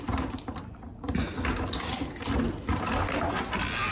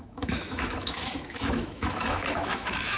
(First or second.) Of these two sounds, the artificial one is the second